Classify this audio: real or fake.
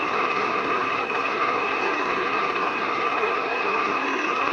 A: fake